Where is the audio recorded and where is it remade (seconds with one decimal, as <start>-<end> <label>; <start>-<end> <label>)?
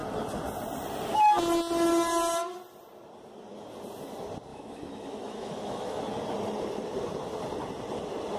0.0-4.5 recorded; 4.5-6.0 remade; 6.0-8.4 recorded